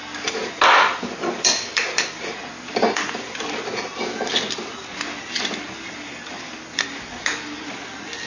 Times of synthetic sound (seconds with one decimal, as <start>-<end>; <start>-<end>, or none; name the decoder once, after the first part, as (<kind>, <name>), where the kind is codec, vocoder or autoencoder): none